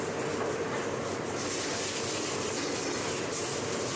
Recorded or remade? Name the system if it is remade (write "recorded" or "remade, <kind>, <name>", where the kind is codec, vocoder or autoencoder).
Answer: recorded